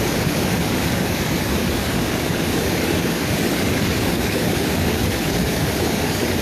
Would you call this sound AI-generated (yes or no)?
yes